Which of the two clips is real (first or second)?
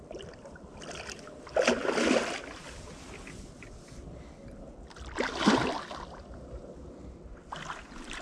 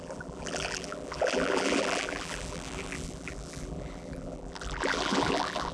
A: first